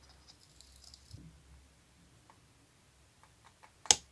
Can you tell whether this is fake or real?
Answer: real